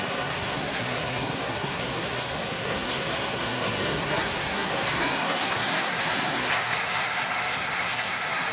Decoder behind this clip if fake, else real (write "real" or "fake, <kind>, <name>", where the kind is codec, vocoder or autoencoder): fake, codec, SNAC